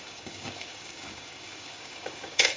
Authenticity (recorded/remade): remade